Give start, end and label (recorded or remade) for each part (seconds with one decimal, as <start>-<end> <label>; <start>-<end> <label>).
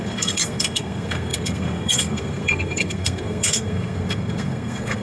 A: 0.0-5.0 remade